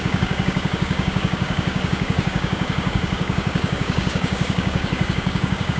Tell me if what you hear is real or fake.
fake